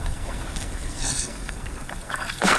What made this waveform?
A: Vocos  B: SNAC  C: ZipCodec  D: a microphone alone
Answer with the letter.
B